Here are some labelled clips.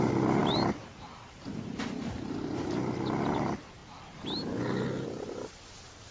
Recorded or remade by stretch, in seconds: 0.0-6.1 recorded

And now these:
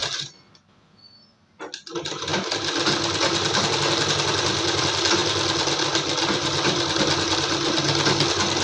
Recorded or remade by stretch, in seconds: 0.0-8.6 recorded

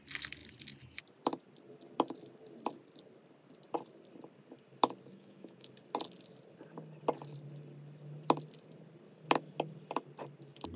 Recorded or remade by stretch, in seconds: 0.0-5.1 recorded; 5.1-5.7 remade; 5.7-10.8 recorded

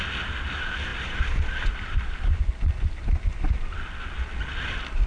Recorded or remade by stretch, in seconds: 0.0-5.1 recorded